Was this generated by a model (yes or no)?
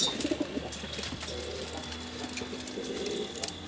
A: no